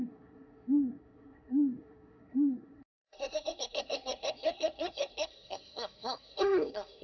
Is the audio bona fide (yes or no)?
no